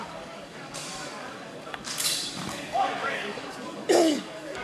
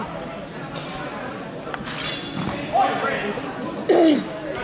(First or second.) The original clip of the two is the second